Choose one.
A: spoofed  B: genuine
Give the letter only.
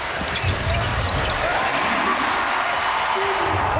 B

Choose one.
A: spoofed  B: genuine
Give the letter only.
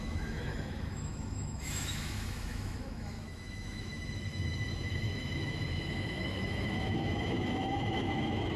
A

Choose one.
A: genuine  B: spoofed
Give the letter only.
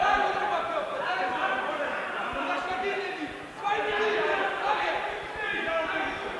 A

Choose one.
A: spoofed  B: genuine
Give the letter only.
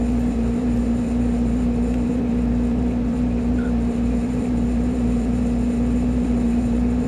A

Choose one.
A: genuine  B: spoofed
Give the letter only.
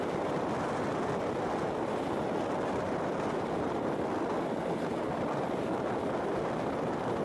A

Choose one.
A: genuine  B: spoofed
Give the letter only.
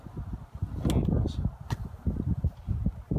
A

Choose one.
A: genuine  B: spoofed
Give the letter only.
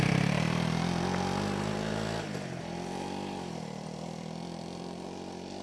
B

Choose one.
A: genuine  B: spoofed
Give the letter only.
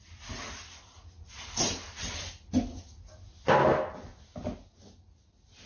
A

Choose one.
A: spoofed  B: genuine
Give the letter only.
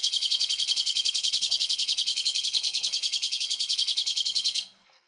A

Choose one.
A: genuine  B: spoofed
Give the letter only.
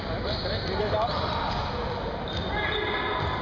A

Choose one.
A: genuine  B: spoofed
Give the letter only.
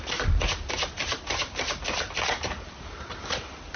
A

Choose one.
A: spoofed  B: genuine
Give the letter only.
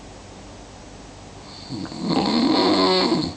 B